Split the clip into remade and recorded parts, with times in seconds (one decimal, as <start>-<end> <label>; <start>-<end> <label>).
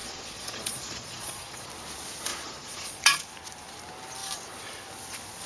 0.0-1.7 remade; 1.7-2.3 recorded; 2.3-3.2 remade; 3.2-5.5 recorded